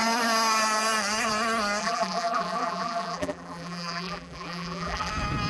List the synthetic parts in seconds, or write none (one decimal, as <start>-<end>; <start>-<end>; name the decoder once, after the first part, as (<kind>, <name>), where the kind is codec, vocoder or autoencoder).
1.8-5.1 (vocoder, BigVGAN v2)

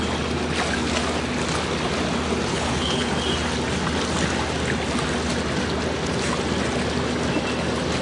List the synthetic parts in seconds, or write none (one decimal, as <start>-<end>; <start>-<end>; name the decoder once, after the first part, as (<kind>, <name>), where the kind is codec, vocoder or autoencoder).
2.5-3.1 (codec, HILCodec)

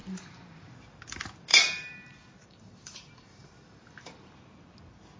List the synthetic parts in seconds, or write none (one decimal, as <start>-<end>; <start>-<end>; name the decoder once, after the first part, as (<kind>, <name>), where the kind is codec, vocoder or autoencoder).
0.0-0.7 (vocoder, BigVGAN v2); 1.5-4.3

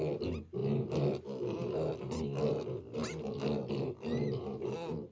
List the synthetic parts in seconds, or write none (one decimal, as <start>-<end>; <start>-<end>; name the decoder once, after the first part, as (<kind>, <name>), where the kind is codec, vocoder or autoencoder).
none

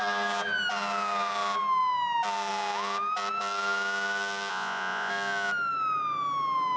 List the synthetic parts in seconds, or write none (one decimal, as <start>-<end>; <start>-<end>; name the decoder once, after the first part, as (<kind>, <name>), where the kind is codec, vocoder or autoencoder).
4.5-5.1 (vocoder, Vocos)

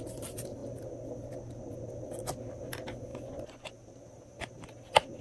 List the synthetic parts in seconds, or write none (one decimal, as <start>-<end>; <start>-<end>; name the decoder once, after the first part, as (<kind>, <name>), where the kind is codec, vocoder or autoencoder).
3.1-3.7 (vocoder, Vocos)